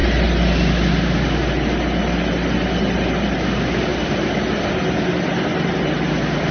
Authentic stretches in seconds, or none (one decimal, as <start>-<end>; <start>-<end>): 0.0-6.5